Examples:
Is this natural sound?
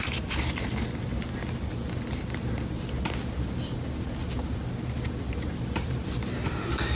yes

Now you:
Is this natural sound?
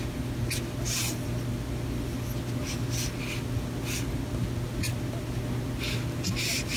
yes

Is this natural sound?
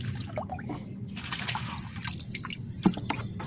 yes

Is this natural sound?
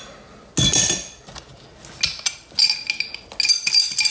yes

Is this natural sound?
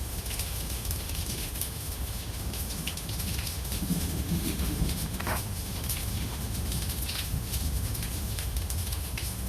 no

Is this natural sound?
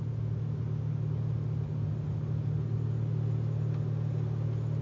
yes